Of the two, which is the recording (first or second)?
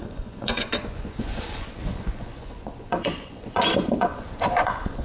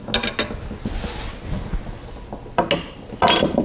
second